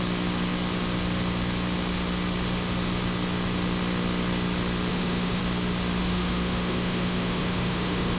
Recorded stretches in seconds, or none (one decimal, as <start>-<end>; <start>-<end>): 0.0-4.9; 5.4-6.0